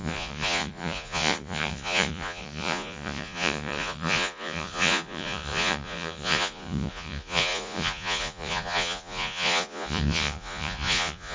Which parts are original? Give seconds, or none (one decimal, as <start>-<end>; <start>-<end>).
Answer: none